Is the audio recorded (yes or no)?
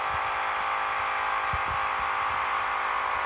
yes